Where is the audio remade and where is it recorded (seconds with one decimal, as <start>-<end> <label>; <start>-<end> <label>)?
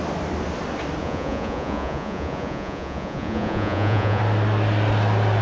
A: 0.0-1.0 recorded; 1.0-4.2 remade; 4.2-5.4 recorded